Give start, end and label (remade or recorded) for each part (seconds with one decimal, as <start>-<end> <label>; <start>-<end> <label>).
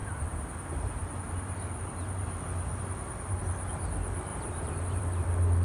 0.0-3.4 remade; 3.4-4.3 recorded; 4.3-5.0 remade; 5.0-5.6 recorded